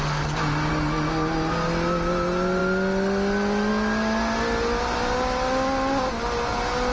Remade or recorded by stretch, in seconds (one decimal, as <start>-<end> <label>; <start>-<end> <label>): 0.0-6.9 recorded